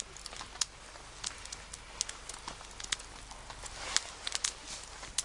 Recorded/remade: recorded